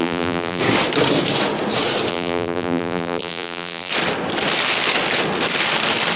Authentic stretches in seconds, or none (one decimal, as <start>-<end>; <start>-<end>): 0.6-2.1; 3.9-6.2